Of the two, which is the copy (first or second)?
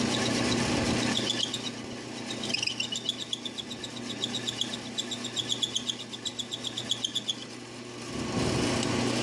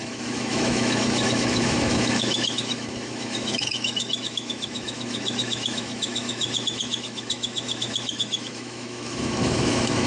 second